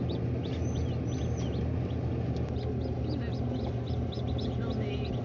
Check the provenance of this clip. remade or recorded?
recorded